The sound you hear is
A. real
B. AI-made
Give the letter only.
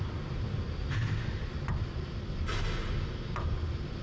A